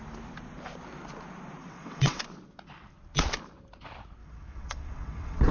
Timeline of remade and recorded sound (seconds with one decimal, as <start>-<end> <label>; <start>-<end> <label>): 0.0-1.6 recorded; 1.6-2.2 remade; 2.2-4.2 recorded; 4.2-5.5 remade